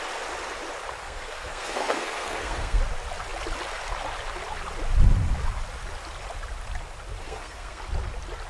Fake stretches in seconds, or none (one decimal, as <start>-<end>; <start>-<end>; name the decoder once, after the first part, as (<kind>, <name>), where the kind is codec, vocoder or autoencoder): 1.0-2.8 (codec, SNAC); 7.2-7.8